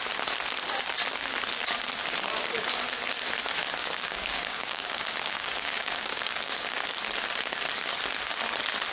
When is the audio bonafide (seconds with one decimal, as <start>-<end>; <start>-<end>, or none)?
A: 0.0-3.8; 6.7-8.9